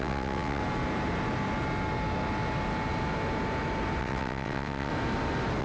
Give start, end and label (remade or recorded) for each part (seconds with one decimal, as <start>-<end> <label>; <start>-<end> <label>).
0.0-0.6 remade; 0.6-4.0 recorded; 4.0-4.9 remade; 4.9-5.6 recorded